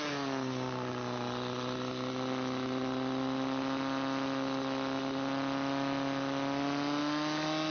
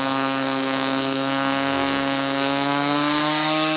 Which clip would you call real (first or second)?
first